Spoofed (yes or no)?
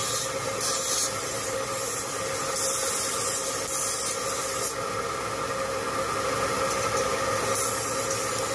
no